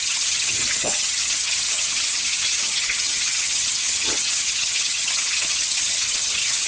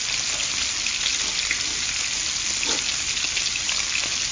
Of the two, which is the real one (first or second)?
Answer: second